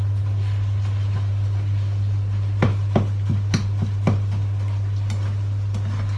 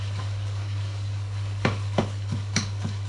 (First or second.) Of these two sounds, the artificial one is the second